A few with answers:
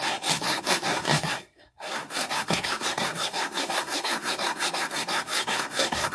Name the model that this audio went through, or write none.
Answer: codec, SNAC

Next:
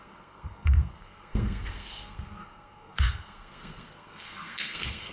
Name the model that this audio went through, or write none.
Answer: codec, SNAC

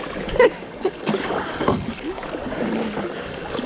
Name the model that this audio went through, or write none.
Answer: codec, DAC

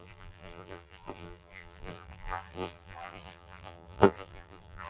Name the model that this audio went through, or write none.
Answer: vocoder, BigVGAN v2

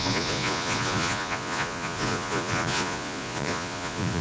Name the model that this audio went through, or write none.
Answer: vocoder, Vocos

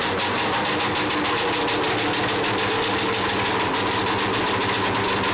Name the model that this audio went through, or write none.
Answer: none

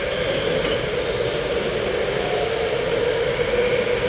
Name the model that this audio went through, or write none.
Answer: none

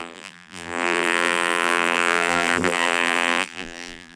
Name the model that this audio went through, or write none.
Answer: vocoder, BigVGAN v2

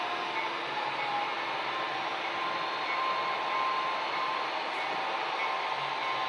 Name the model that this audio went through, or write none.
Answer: none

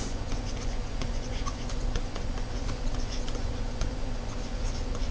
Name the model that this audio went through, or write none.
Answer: vocoder, Vocos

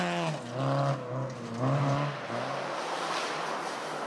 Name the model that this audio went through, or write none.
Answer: none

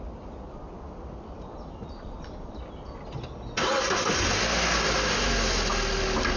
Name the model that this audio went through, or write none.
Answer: none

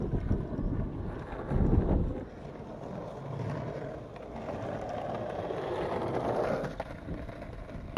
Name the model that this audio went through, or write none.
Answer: none